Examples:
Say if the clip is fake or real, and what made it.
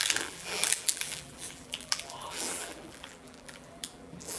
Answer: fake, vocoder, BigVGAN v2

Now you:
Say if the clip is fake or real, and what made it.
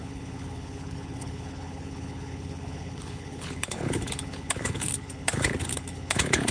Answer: fake, codec, HILCodec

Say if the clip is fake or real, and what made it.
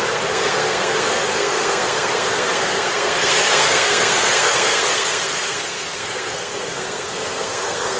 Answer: fake, codec, SNAC